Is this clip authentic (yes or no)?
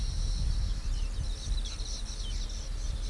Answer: yes